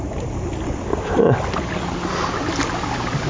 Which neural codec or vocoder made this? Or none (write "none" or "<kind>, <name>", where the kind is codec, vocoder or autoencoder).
none